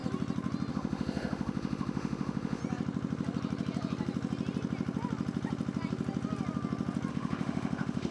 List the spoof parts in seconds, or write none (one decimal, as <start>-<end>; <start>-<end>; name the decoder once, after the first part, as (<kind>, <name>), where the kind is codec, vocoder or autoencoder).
0.7-2.6 (autoencoder, DAC-VAE); 7.1-8.1